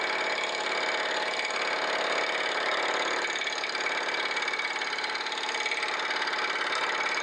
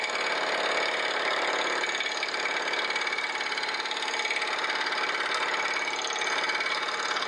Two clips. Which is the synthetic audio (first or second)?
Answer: first